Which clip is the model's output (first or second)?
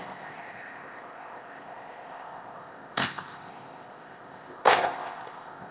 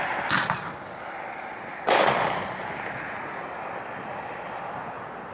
first